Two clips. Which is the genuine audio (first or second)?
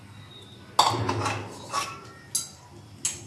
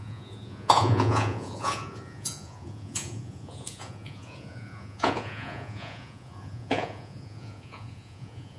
first